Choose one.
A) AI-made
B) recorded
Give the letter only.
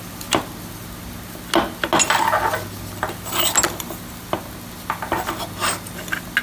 B